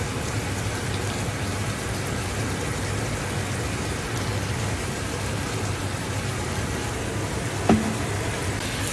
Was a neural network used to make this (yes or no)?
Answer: no